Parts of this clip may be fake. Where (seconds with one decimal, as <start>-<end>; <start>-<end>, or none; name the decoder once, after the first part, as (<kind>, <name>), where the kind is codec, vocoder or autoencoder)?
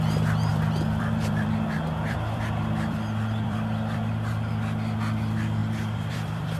0.5-4.1 (vocoder, BigVGAN v2); 5.6-6.6